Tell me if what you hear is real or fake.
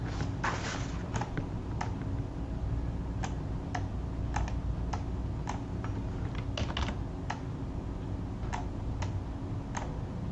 real